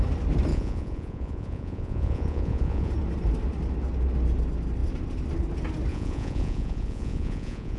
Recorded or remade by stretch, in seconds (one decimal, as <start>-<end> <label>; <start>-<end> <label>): 0.0-0.5 recorded; 0.5-2.9 remade; 2.9-5.9 recorded; 5.9-7.8 remade